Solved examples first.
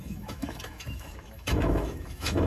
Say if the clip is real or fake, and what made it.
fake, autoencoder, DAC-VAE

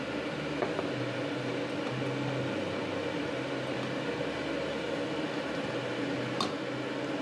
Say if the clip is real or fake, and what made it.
real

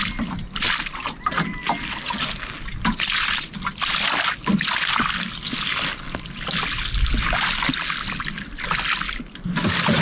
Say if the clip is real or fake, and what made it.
real